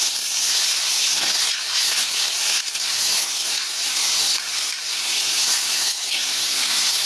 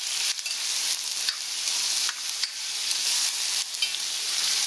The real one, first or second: second